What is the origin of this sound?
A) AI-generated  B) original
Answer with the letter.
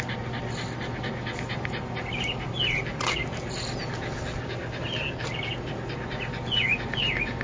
B